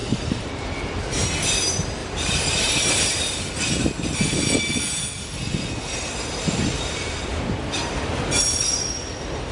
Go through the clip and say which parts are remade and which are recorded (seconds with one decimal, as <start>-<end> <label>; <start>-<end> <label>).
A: 0.0-0.5 remade; 0.5-2.0 recorded; 2.0-3.5 remade; 3.5-7.3 recorded; 7.3-7.9 remade; 7.9-9.5 recorded